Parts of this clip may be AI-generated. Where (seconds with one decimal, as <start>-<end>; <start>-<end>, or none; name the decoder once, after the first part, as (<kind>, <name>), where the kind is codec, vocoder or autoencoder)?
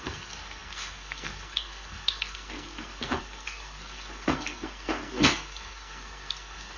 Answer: 0.0-6.8 (codec, SNAC)